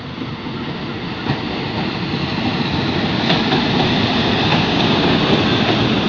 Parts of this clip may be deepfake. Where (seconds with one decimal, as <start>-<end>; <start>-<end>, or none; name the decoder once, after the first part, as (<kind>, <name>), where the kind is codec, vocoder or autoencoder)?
4.5-5.2 (codec, DAC)